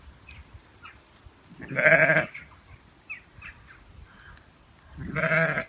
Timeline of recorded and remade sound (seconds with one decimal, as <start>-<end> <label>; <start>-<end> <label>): 0.0-5.7 recorded